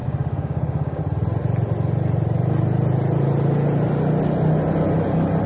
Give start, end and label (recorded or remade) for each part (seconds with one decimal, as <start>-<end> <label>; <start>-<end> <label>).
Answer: 0.0-1.0 remade; 1.0-5.5 recorded